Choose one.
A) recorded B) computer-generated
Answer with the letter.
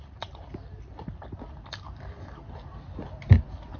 A